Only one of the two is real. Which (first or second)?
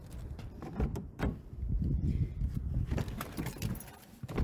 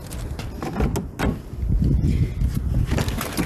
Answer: second